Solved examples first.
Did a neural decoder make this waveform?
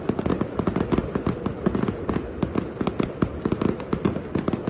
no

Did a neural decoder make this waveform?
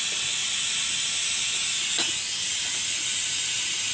no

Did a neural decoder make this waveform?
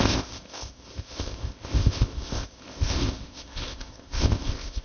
yes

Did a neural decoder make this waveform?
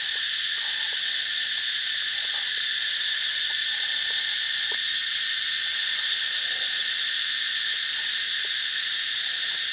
no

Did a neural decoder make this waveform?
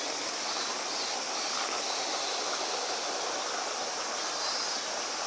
no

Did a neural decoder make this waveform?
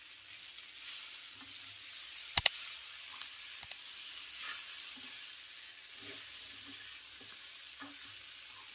no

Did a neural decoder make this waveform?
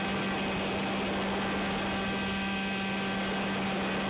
no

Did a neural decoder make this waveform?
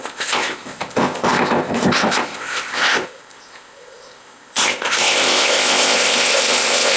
yes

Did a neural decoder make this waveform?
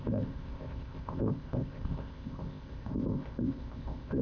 yes